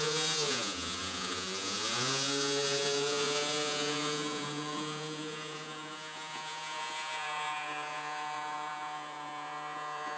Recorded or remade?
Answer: remade